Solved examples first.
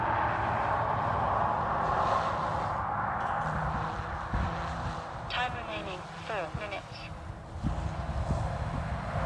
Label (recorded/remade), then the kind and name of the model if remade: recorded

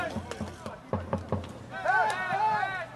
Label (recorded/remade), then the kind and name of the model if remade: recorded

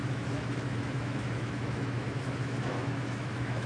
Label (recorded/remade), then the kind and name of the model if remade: remade, autoencoder, DAC-VAE